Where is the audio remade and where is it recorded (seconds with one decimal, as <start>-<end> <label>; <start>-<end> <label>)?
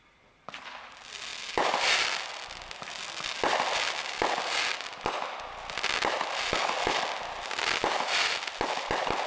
0.0-9.3 recorded